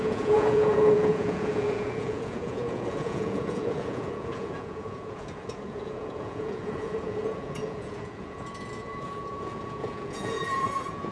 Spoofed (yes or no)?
yes